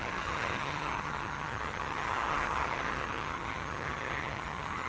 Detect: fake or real fake